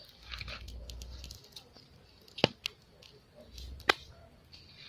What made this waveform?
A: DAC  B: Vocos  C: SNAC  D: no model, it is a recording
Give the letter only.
D